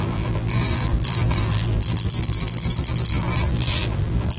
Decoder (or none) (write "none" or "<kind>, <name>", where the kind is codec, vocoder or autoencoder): vocoder, BigVGAN v2